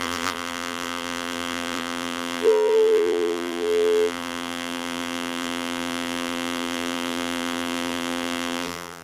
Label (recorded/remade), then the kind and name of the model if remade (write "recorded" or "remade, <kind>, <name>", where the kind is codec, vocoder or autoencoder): remade, vocoder, BigVGAN v2